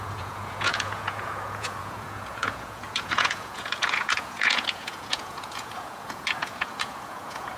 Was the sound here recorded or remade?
remade